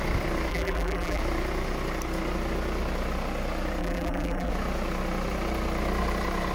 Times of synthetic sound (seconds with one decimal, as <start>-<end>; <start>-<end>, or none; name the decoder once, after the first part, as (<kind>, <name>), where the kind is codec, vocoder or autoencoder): 0.5-1.2 (vocoder, BigVGAN v2); 3.8-4.5